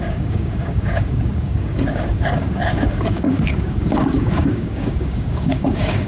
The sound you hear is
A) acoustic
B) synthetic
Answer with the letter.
B